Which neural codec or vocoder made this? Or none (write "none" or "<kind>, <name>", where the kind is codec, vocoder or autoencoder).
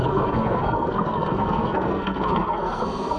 codec, SNAC